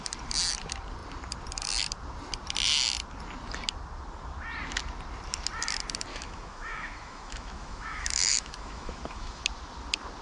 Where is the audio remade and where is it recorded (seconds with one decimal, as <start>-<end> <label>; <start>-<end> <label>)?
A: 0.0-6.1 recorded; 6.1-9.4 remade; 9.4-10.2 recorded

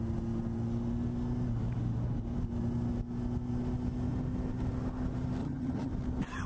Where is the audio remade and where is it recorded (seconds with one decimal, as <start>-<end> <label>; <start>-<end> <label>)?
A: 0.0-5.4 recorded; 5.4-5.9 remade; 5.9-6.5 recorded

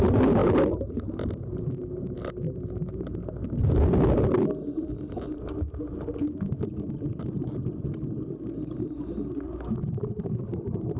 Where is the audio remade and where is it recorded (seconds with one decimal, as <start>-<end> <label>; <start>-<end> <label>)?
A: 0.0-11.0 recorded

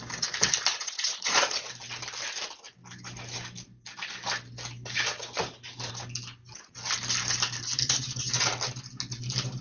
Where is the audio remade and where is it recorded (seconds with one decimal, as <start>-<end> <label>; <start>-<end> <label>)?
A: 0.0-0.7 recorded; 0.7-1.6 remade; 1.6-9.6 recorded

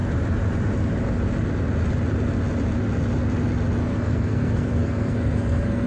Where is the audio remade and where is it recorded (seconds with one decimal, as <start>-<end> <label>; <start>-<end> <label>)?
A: 0.0-3.8 recorded; 3.8-5.9 remade